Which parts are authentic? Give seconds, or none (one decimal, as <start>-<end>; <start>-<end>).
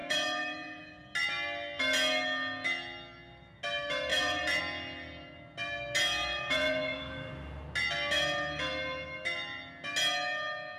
0.8-4.1; 4.6-6.2; 7.3-10.8